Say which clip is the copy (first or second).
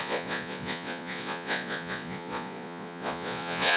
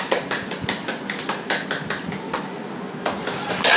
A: first